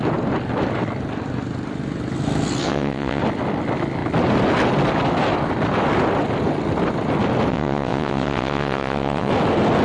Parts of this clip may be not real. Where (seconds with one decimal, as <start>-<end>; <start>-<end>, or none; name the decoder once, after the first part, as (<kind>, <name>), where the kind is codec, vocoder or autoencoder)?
2.6-3.2 (vocoder, WaveNeXt); 7.5-9.3